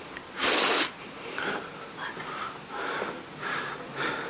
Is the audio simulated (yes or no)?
no